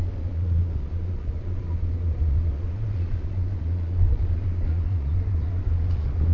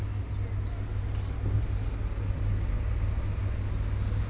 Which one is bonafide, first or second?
second